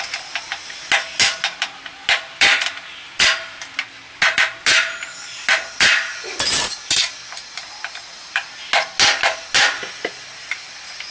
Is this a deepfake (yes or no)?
no